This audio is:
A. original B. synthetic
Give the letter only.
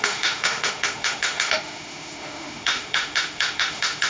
B